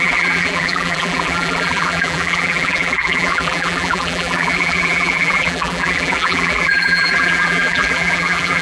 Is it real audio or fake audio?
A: fake